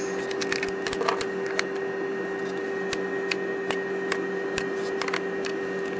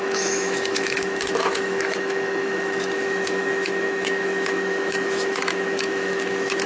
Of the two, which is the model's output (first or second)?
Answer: second